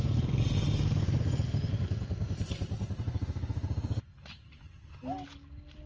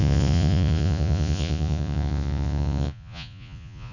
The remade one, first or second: second